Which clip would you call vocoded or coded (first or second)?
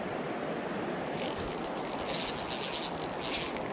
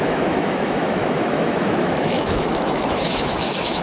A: second